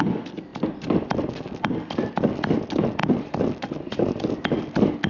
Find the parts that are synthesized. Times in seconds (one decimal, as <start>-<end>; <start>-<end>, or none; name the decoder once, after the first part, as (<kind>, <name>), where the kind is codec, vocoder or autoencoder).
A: none